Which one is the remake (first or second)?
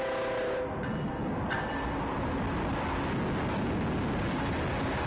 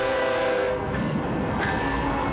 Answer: second